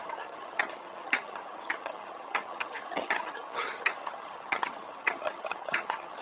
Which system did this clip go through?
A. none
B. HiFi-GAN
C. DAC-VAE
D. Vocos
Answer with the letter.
B